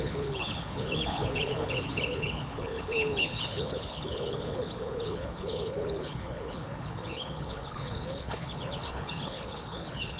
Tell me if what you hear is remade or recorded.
remade